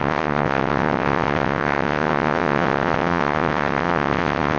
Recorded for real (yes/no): no